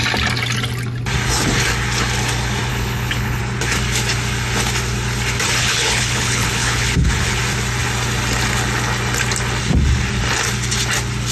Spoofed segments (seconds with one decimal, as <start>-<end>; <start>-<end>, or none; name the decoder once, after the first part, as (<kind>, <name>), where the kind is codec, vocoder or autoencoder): 2.7-3.4 (codec, HILCodec); 5.6-7.4